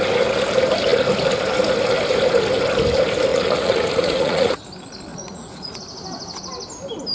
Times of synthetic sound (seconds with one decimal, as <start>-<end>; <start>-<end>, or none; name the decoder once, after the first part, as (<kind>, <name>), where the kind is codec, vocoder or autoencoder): 3.3-4.6 (vocoder, Vocos); 5.1-5.8